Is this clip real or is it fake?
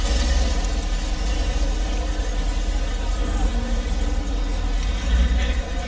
real